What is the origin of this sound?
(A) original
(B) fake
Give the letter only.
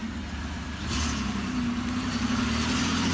A